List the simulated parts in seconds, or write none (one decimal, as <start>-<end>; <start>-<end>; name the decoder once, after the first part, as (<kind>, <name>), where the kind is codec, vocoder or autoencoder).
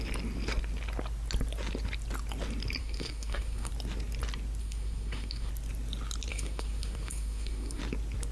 2.8-3.7 (codec, SNAC); 4.6-5.5; 6.3-7.8